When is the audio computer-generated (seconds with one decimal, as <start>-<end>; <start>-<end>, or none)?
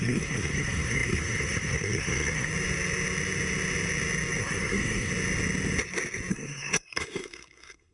0.0-2.5; 4.4-5.1; 6.3-7.9